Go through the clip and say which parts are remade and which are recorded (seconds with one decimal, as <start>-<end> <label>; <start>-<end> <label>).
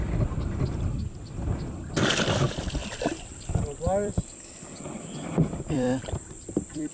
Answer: 0.0-6.9 remade